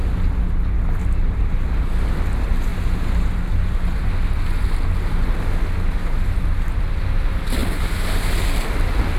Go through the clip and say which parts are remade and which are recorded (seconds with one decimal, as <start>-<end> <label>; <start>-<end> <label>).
0.0-9.2 recorded